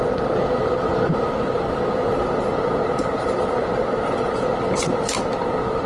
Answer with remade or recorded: recorded